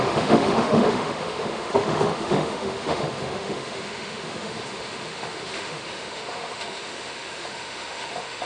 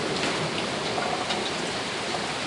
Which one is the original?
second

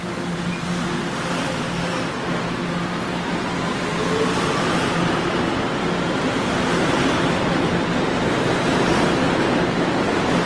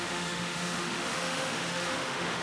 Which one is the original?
first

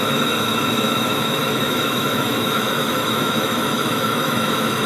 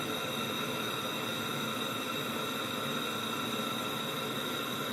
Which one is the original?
second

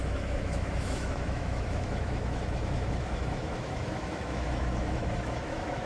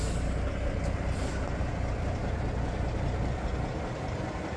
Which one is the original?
second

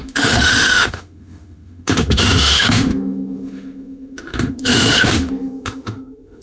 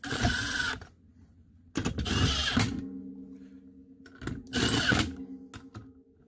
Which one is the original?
second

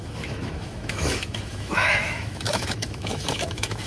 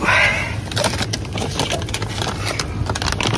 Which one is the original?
second